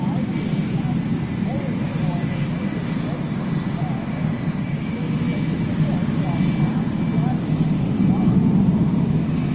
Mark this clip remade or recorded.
recorded